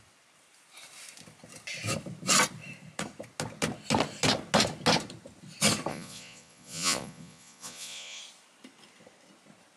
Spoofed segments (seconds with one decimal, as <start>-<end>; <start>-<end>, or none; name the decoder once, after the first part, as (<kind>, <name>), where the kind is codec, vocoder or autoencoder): 5.9-8.2 (vocoder, Vocos)